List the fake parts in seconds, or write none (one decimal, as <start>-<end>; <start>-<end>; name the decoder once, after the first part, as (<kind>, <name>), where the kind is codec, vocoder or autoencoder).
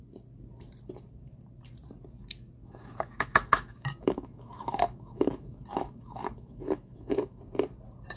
2.6-7.4 (autoencoder, DAC-VAE)